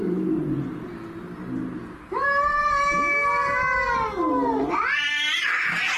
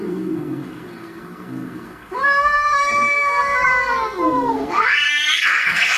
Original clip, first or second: first